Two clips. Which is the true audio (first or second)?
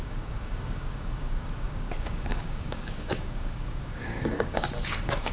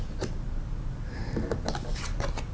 second